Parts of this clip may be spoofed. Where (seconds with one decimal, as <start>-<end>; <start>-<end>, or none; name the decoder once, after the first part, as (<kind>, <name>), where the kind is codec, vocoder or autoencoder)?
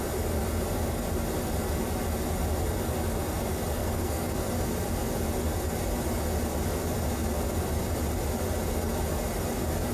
3.8-4.3 (codec, SNAC)